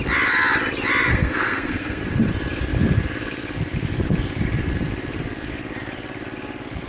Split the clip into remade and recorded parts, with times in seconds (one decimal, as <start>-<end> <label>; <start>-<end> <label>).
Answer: 0.0-1.1 recorded; 1.1-2.0 remade; 2.0-6.9 recorded